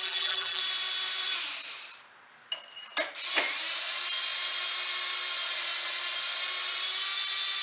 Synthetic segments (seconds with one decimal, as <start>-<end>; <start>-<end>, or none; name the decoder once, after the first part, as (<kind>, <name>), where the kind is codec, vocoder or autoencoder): 0.0-0.6 (vocoder, BigVGAN v2)